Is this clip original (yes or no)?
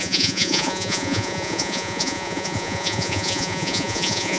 no